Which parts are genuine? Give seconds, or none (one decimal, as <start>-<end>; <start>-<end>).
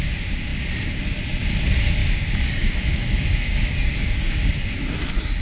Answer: 0.0-2.0; 4.5-5.4